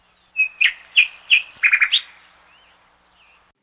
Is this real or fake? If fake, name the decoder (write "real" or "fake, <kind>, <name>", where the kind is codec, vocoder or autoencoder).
real